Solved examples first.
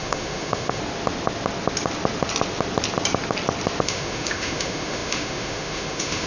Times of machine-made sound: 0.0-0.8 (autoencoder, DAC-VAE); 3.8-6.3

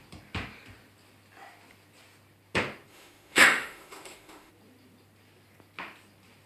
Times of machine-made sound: 2.9-4.5 (autoencoder, DAC-VAE)